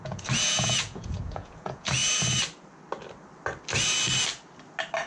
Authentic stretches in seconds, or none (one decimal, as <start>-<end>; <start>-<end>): 2.0-5.1